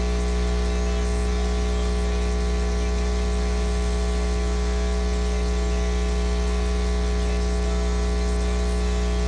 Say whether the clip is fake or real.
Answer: real